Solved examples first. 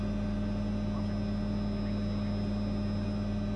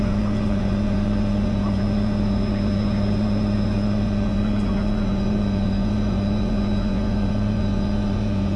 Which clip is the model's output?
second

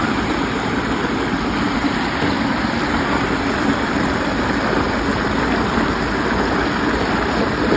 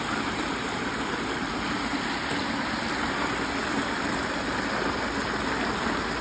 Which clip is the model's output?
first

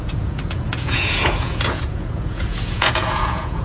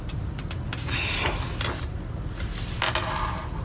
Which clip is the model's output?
first